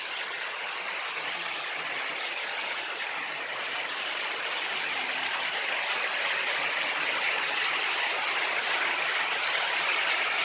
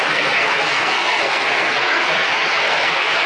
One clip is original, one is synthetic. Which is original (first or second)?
first